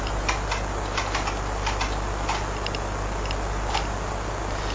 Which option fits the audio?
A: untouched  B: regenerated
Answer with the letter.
A